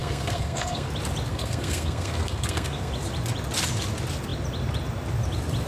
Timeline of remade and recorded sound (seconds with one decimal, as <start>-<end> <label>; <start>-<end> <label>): 0.0-0.9 remade; 0.9-1.3 recorded; 1.3-2.9 remade; 2.9-5.7 recorded